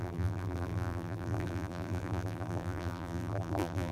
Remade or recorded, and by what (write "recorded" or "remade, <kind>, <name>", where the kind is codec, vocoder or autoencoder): remade, vocoder, BigVGAN v2